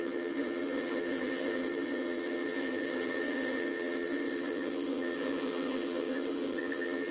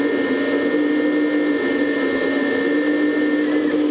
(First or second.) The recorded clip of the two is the second